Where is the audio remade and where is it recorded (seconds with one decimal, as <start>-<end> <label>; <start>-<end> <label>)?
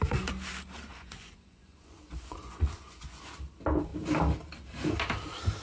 0.0-0.9 recorded; 0.9-3.2 remade; 3.2-5.6 recorded